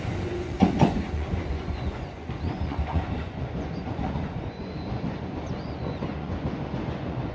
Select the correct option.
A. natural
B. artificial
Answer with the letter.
B